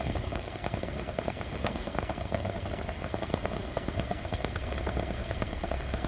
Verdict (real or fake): fake